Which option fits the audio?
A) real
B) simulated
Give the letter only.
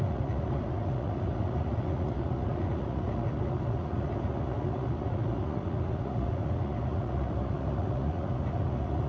B